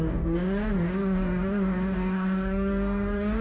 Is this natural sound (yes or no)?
no